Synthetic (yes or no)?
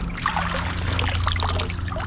no